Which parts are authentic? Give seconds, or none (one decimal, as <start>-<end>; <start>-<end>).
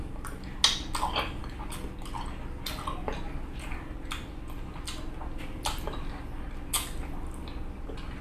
0.0-8.2